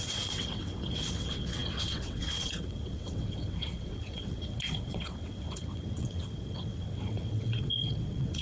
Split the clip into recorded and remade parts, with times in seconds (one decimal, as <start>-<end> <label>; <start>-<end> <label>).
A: 0.0-8.4 remade